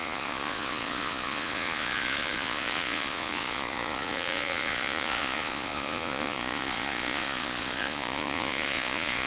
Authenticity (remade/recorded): remade